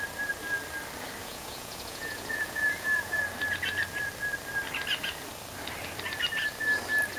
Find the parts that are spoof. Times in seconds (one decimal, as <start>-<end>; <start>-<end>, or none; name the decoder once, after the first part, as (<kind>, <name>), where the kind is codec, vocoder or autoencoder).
1.2-3.2 (vocoder, Vocos)